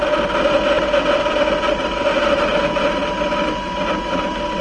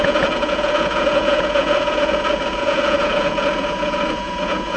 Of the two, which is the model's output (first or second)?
second